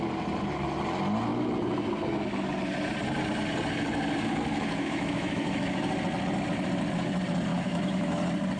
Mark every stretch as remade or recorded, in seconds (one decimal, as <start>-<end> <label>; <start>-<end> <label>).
0.0-4.5 recorded; 4.5-5.8 remade; 5.8-7.5 recorded; 7.5-8.2 remade; 8.2-8.6 recorded